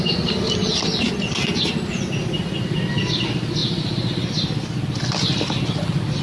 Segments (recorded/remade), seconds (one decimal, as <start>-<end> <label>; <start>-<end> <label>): 0.0-6.2 recorded